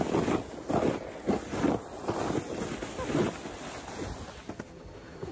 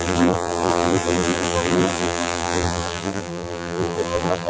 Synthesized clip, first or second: second